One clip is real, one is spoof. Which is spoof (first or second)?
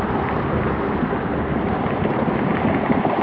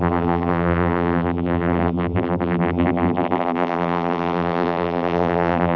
second